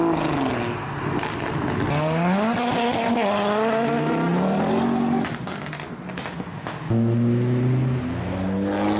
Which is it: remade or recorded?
recorded